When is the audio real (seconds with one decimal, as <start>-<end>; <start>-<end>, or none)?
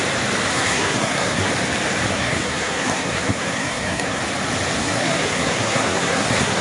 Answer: 0.0-0.5; 1.5-2.1; 4.2-4.8